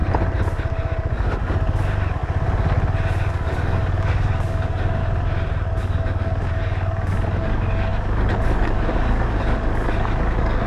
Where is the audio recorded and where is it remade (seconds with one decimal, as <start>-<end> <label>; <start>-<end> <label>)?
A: 0.0-3.3 recorded; 3.3-5.0 remade; 5.0-5.8 recorded; 5.8-10.7 remade